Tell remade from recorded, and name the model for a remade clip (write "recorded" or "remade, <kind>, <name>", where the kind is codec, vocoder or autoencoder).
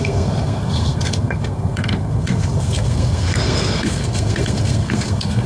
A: remade, codec, SNAC